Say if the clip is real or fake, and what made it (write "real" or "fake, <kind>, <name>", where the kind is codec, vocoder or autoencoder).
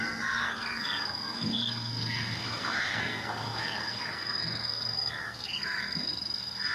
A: fake, codec, SNAC